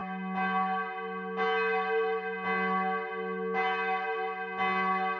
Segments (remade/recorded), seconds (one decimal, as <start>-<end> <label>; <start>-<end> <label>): 0.0-5.2 recorded